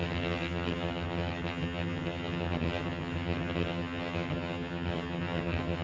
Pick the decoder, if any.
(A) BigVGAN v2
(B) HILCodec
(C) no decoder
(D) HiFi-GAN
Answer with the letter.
D